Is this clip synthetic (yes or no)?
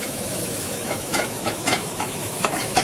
yes